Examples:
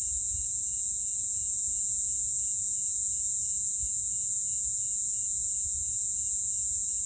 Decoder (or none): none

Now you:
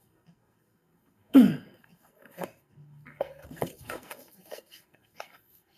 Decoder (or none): codec, SNAC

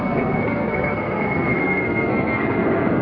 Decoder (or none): codec, SNAC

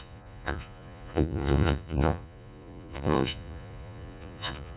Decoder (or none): vocoder, Vocos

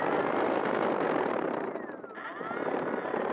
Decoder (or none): none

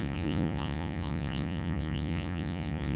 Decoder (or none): vocoder, Vocos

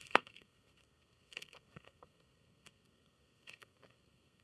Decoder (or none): codec, SNAC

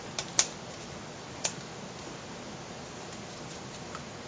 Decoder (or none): none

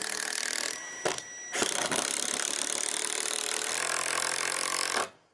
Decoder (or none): none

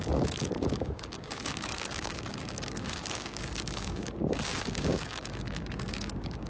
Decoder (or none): codec, DAC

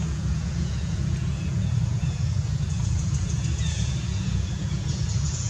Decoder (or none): vocoder, Vocos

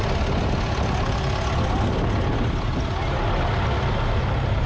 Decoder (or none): none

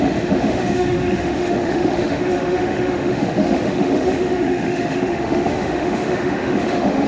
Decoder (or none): autoencoder, DAC-VAE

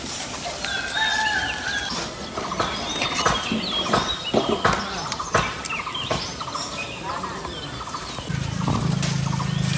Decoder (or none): none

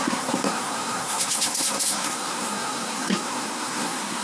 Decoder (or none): codec, SNAC